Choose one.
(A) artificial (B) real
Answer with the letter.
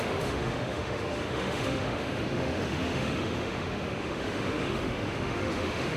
A